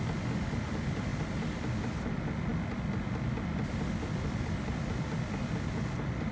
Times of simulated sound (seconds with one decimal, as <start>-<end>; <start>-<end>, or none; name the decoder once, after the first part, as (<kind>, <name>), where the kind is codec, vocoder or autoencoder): none